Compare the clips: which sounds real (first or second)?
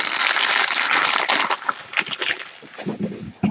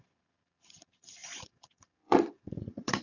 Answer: first